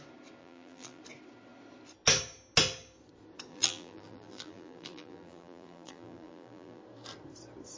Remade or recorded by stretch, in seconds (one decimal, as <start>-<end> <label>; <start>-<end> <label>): 0.0-0.4 recorded; 0.4-1.0 remade; 1.0-3.5 recorded; 3.5-6.8 remade; 6.8-7.8 recorded